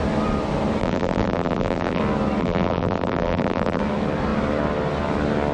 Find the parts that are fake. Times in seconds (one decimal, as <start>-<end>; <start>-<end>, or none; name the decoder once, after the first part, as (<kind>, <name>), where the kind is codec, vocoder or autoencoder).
0.8-2.0 (vocoder, BigVGAN v2); 2.4-3.8